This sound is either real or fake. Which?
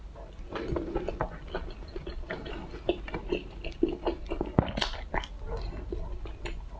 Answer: real